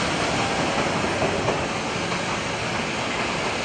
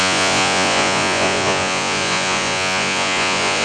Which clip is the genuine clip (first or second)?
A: first